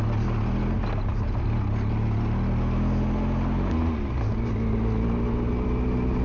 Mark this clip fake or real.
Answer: real